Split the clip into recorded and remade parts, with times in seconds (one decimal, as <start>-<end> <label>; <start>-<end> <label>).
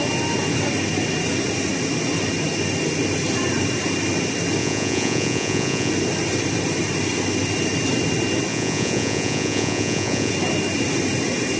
0.0-4.6 recorded; 4.6-5.9 remade; 5.9-8.5 recorded; 8.5-10.3 remade; 10.3-11.6 recorded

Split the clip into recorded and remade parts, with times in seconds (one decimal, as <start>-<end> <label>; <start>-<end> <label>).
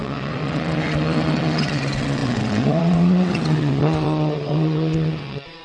0.0-5.6 remade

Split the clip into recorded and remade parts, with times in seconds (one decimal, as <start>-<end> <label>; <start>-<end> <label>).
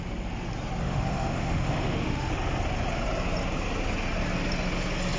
0.0-0.8 recorded; 0.8-2.3 remade; 2.3-5.2 recorded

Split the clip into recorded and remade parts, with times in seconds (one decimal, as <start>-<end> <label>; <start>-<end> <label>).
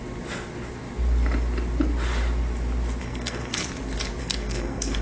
0.0-3.0 recorded; 3.0-3.6 remade; 3.6-4.2 recorded; 4.2-5.0 remade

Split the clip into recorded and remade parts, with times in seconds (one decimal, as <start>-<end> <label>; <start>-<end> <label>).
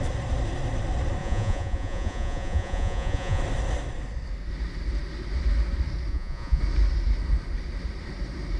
0.0-1.2 recorded; 1.2-3.4 remade; 3.4-6.1 recorded; 6.1-6.6 remade; 6.6-8.6 recorded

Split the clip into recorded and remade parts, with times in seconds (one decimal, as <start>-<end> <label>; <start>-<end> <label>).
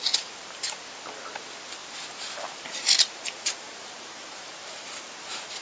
0.0-1.8 recorded; 1.8-5.6 remade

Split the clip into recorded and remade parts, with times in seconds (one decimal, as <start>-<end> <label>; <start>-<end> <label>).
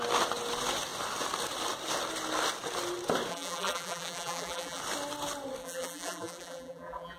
0.0-3.3 recorded; 3.3-4.8 remade; 4.8-5.6 recorded; 5.6-7.2 remade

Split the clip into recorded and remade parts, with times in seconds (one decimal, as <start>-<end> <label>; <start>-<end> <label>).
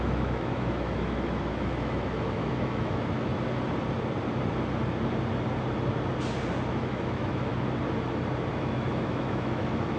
0.0-3.3 remade; 3.3-6.7 recorded; 6.7-7.5 remade; 7.5-8.5 recorded; 8.5-10.0 remade